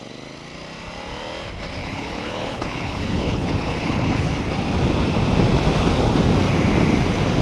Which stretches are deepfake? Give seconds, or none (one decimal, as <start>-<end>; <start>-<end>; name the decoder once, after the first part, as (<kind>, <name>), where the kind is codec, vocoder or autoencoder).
1.8-4.3 (codec, HILCodec)